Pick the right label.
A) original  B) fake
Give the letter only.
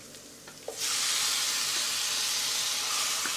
A